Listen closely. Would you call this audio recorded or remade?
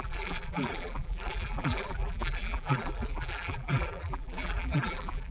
remade